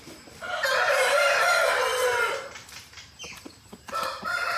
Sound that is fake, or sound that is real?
fake